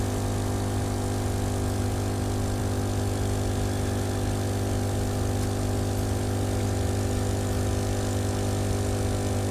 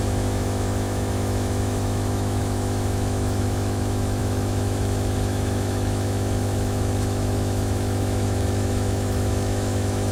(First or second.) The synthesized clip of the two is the second